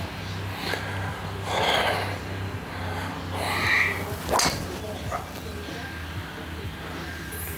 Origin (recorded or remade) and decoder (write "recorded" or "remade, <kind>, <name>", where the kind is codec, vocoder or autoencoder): recorded